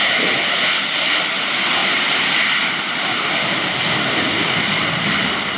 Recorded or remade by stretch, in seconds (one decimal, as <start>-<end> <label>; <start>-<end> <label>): 0.0-1.8 recorded; 1.8-5.6 remade